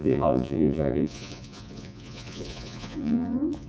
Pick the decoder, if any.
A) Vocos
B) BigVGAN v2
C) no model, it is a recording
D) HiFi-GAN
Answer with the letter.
A